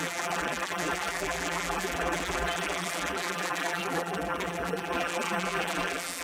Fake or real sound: fake